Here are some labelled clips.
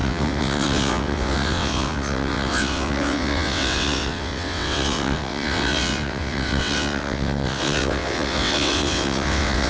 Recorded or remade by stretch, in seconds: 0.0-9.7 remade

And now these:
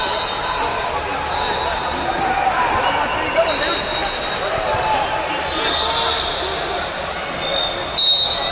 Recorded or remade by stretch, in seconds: 0.0-8.5 recorded